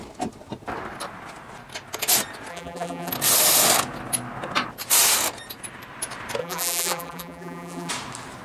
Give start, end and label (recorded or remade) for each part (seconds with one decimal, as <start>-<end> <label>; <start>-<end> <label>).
0.0-2.5 recorded; 2.5-3.1 remade; 3.1-6.4 recorded; 6.4-7.9 remade; 7.9-8.4 recorded